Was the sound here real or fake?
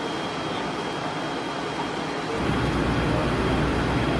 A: real